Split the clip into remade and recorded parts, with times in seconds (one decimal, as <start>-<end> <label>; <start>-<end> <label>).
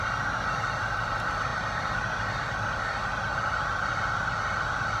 0.0-5.0 recorded